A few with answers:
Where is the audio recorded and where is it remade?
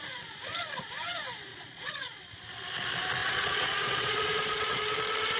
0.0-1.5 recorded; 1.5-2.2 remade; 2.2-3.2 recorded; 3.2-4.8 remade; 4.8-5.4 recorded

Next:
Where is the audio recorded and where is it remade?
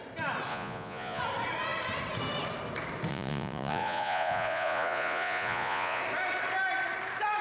0.0-0.5 recorded; 0.5-1.2 remade; 1.2-3.1 recorded; 3.1-6.0 remade; 6.0-7.4 recorded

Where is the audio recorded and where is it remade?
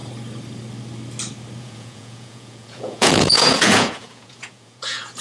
0.0-1.6 recorded; 1.6-5.2 remade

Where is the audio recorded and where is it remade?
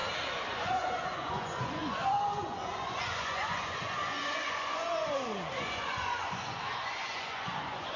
0.0-0.5 recorded; 0.5-8.0 remade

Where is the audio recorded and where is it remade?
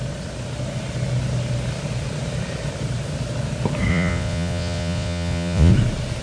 0.0-3.9 recorded; 3.9-5.7 remade; 5.7-6.2 recorded